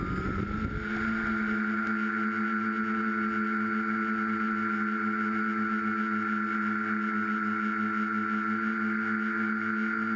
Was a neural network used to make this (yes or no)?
no